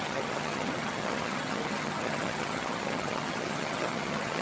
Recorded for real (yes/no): no